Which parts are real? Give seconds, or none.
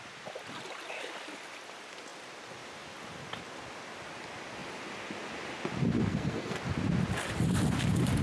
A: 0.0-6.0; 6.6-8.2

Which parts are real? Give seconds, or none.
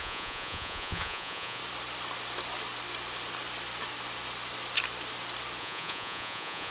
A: 1.6-5.6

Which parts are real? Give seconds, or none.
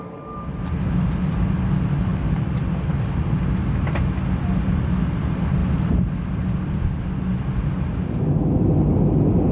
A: 0.0-9.5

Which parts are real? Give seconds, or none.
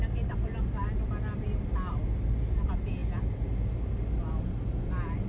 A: 0.0-5.3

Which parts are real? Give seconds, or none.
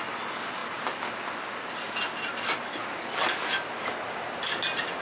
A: 0.0-5.0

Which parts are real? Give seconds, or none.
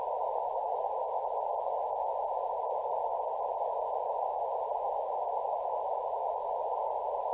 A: 0.0-7.3